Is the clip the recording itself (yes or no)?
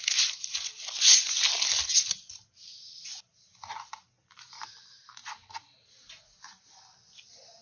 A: yes